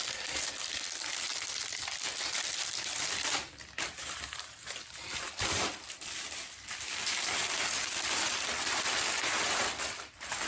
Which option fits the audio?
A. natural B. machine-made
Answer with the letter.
B